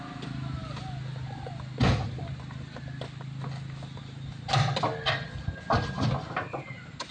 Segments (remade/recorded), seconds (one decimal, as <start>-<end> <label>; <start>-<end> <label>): 0.0-7.1 recorded